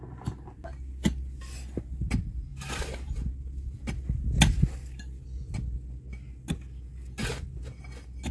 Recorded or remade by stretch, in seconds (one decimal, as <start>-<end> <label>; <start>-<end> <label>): 0.0-8.3 recorded